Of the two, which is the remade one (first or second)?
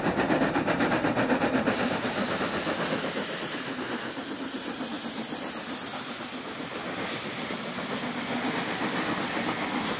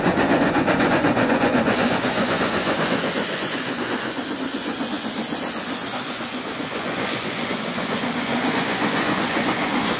second